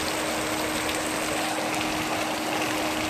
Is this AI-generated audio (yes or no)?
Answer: no